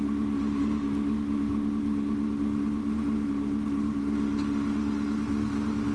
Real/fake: real